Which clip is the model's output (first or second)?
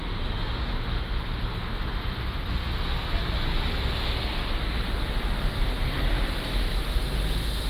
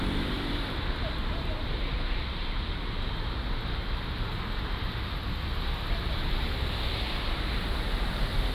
second